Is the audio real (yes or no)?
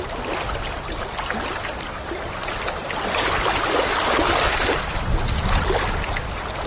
yes